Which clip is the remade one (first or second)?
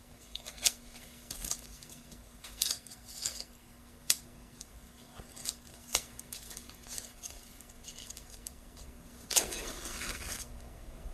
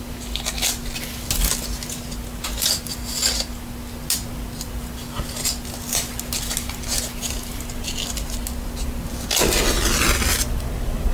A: first